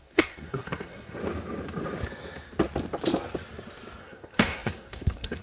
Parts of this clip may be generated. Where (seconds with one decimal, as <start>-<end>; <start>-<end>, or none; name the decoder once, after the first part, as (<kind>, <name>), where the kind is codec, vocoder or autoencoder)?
0.0-1.2 (codec, SNAC); 4.0-5.4

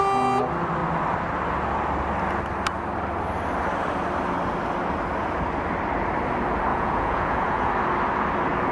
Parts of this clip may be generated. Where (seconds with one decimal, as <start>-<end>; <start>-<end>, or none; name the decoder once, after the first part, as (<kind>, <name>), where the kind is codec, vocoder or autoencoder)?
6.7-7.7 (vocoder, Vocos)

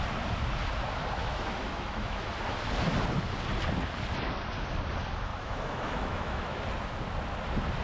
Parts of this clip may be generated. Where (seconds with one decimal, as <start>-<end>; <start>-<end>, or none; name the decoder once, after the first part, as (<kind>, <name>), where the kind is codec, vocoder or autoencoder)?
1.2-2.3 (autoencoder, DAC-VAE); 5.3-6.6